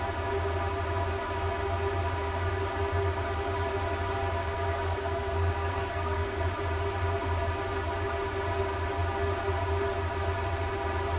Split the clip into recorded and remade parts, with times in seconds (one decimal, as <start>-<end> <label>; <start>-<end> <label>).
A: 0.0-4.4 recorded; 4.4-6.4 remade; 6.4-11.2 recorded